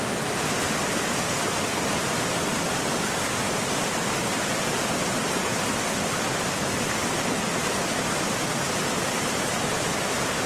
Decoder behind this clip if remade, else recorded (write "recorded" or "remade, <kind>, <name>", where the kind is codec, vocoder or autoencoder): recorded